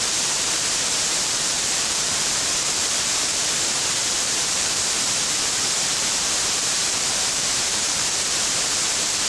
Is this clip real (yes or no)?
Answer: no